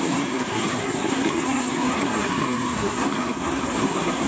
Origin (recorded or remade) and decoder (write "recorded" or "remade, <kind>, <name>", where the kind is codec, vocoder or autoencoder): remade, codec, SNAC